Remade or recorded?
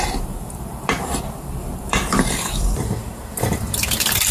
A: remade